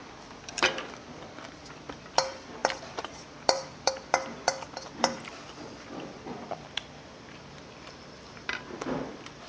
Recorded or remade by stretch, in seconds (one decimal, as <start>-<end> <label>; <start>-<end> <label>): 0.0-9.5 remade